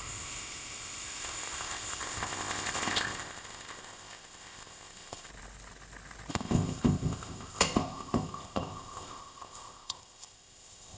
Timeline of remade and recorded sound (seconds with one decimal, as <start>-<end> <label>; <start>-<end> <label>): 0.0-5.3 remade; 5.3-6.3 recorded; 6.3-11.0 remade